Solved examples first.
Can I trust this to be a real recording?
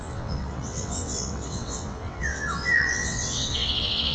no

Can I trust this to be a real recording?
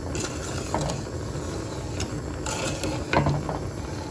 yes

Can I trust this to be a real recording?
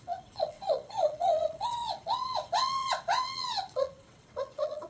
no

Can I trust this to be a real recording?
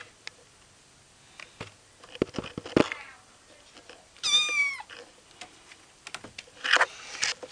yes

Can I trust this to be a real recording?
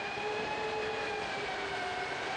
yes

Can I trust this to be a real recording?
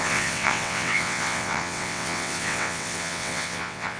no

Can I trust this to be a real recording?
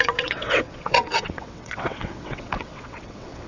no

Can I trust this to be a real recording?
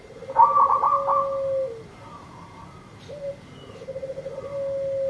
yes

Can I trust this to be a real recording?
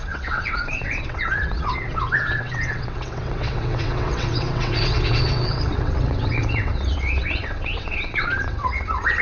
no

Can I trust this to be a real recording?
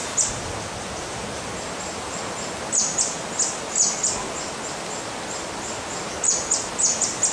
yes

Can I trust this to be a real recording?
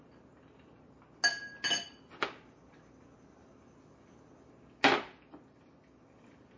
yes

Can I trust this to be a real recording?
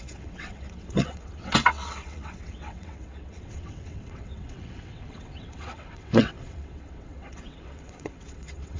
no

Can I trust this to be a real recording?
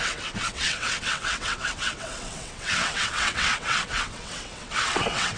no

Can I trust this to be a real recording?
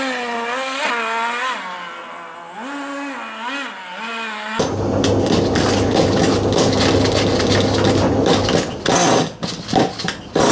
yes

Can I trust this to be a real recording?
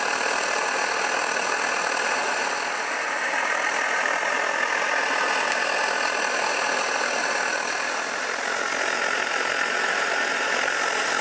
yes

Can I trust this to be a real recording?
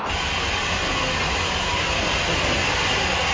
yes